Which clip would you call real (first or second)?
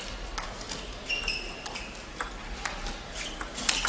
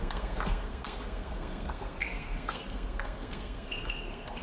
first